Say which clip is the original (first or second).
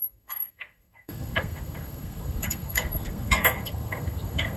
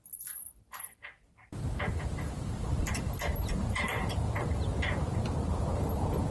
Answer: second